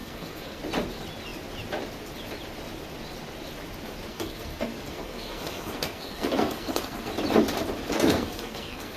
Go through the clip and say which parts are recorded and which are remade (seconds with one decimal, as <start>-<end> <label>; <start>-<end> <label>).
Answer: 0.0-0.6 remade; 0.6-4.1 recorded; 4.1-7.1 remade; 7.1-7.9 recorded; 7.9-9.0 remade